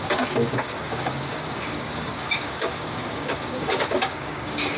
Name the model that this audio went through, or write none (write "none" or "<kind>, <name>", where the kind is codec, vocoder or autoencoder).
codec, DAC